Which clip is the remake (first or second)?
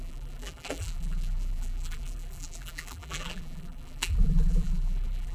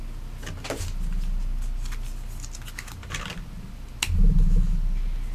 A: first